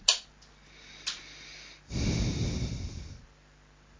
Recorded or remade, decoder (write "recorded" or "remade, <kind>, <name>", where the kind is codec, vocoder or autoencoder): recorded